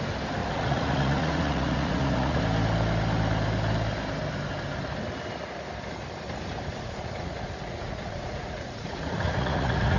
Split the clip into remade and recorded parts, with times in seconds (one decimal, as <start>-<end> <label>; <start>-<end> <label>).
0.0-0.4 recorded; 0.4-2.4 remade; 2.4-6.7 recorded; 6.7-10.0 remade